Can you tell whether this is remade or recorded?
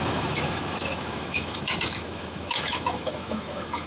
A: remade